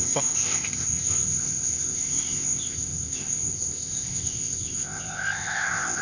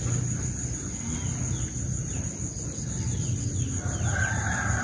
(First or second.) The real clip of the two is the second